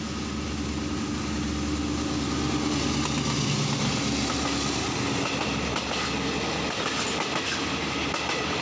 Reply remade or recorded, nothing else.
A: recorded